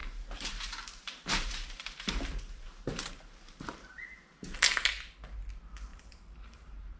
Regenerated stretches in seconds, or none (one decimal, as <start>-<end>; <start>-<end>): 0.0-4.2; 5.9-7.0